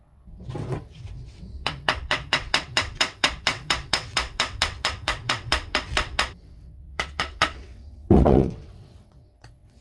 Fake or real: fake